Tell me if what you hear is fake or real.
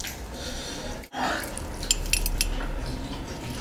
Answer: real